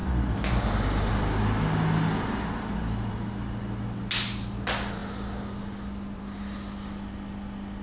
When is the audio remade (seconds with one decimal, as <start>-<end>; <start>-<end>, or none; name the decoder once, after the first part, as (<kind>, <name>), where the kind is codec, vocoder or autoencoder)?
none